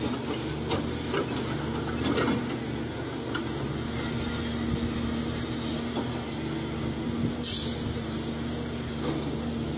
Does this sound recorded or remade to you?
recorded